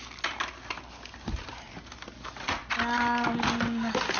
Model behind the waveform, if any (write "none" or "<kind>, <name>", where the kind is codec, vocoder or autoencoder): none